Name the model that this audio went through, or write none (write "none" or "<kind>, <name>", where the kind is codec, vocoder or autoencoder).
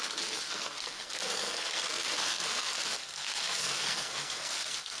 codec, SNAC